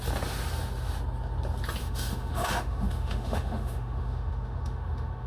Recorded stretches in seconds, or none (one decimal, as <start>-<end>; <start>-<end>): 0.0-1.8